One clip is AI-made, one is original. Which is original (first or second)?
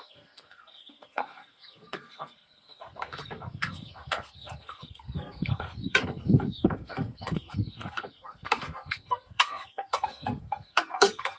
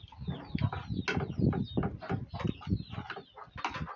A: second